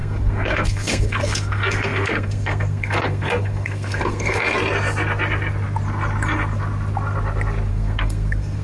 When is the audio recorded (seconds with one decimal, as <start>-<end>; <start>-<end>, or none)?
4.4-7.7